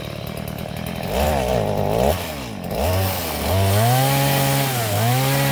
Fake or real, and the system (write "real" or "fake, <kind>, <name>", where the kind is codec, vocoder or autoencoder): real